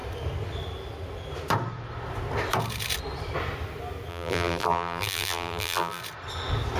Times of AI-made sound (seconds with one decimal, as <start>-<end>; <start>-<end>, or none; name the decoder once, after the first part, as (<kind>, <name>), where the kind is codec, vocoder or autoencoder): 4.1-6.0 (vocoder, BigVGAN v2)